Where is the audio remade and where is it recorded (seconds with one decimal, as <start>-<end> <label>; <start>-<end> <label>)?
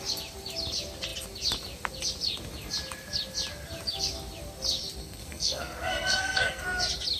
0.0-5.0 recorded; 5.0-6.6 remade; 6.6-7.2 recorded